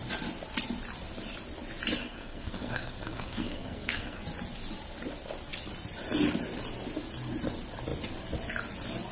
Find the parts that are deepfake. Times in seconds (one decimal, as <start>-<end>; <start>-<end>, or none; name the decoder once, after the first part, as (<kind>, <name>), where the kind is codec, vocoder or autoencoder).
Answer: 2.0-4.2 (codec, SNAC)